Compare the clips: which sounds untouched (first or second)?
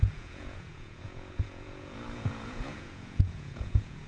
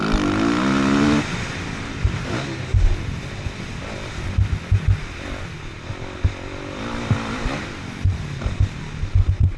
second